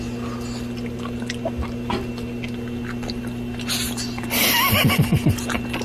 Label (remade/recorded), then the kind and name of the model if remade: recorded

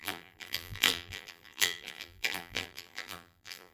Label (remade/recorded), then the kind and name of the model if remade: remade, vocoder, BigVGAN v2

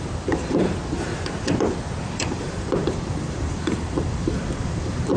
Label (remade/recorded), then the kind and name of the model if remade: remade, vocoder, BigVGAN v2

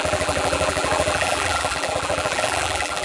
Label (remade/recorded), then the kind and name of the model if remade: remade, vocoder, BigVGAN v2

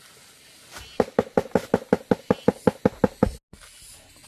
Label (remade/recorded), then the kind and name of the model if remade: recorded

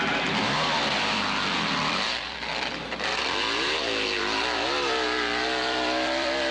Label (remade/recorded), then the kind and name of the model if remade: remade, vocoder, BigVGAN v2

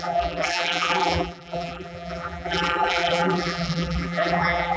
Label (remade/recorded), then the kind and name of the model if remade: remade, vocoder, BigVGAN v2